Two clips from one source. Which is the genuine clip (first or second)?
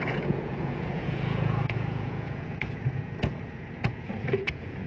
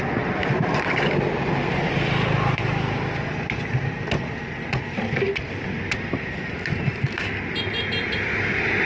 second